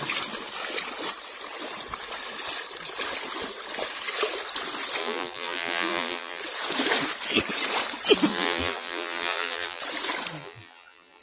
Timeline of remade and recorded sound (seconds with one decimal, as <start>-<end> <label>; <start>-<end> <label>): 0.0-5.0 recorded; 5.0-6.4 remade; 6.4-8.3 recorded; 8.3-9.8 remade; 9.8-10.4 recorded; 10.4-11.2 remade